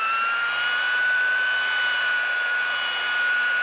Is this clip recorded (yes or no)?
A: no